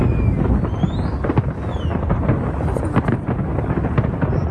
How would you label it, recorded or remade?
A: recorded